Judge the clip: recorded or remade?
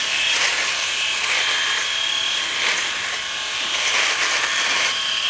recorded